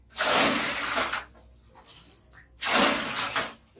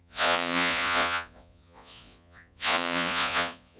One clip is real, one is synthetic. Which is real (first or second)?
first